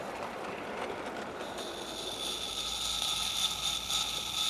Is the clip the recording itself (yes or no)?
yes